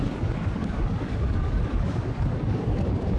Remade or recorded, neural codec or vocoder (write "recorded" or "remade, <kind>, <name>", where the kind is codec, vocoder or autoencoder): remade, codec, DAC